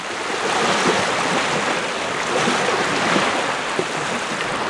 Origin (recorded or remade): recorded